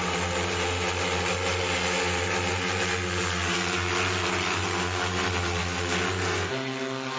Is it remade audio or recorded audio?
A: recorded